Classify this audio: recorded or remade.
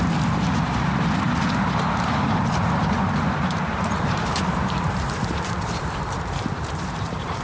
remade